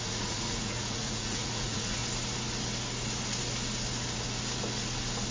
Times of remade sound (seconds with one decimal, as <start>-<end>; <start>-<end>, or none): 0.0-2.0